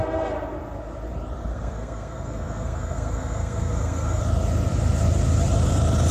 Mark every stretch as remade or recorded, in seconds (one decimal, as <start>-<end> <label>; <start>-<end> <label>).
0.0-1.5 recorded; 1.5-4.2 remade; 4.2-6.1 recorded

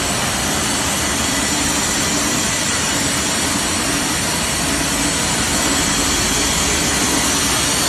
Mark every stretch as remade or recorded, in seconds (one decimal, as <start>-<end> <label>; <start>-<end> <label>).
0.0-2.1 recorded; 2.1-2.7 remade; 2.7-7.9 recorded

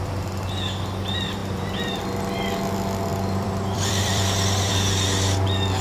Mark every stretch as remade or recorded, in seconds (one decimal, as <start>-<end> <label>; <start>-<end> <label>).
0.0-1.4 recorded; 1.4-2.0 remade; 2.0-3.1 recorded; 3.1-4.7 remade; 4.7-5.8 recorded

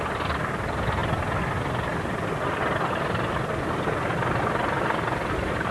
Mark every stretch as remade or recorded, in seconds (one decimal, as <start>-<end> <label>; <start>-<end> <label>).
0.0-5.7 recorded

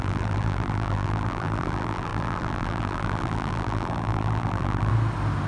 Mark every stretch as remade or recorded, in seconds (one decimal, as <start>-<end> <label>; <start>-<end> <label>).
0.0-4.9 remade; 4.9-5.5 recorded